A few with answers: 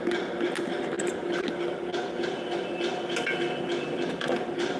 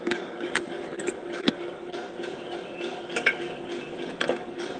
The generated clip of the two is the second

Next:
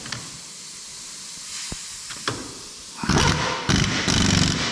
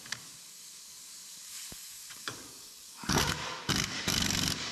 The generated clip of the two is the second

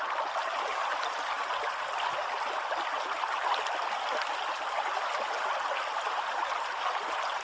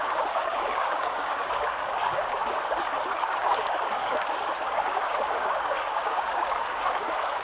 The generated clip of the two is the second